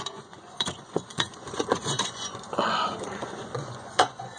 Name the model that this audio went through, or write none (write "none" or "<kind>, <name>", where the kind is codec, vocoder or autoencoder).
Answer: vocoder, Vocos